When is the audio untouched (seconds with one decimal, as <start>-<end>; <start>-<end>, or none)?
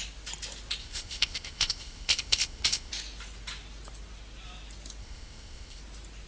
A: 0.0-0.8; 2.9-5.0; 5.8-6.3